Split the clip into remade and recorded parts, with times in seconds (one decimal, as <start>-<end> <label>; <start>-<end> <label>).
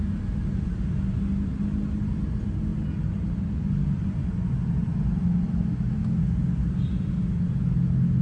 0.0-8.2 recorded